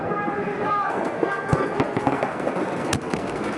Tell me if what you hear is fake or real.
fake